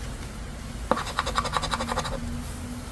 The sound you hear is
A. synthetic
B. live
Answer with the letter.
B